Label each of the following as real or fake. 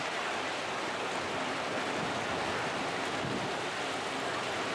real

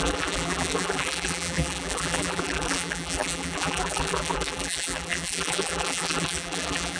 fake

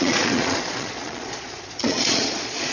fake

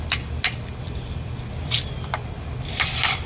real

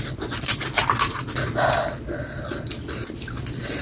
real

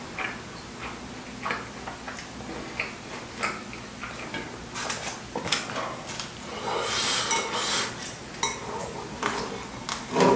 real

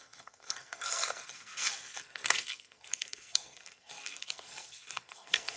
fake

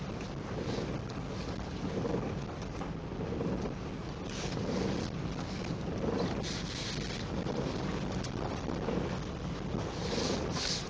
real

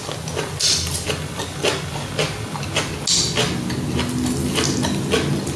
real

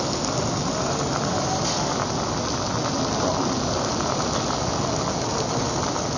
real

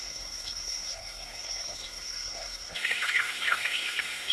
fake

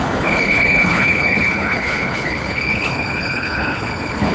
fake